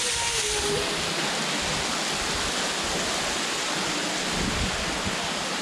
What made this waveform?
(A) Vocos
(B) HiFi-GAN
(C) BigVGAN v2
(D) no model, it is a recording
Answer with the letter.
D